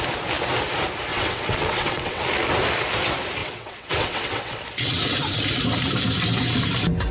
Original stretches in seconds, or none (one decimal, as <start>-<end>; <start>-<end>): 0.0-1.1; 2.2-3.4; 5.4-7.1